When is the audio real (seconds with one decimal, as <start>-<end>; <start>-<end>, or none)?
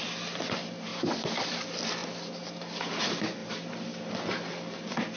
0.0-5.2